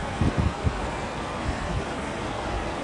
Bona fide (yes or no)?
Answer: no